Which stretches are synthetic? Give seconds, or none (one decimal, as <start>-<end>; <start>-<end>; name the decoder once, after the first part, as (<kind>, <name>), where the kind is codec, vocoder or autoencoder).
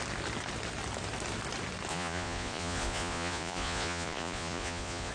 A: 1.9-5.1 (vocoder, Vocos)